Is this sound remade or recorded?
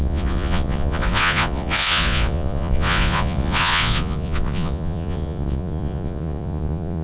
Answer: remade